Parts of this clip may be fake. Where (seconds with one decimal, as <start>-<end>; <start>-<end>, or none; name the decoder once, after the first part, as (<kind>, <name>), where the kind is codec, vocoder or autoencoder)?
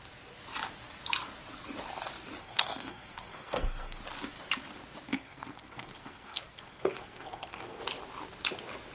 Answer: 2.4-4.0 (codec, SNAC); 5.1-7.8